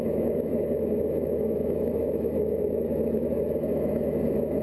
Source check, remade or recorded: remade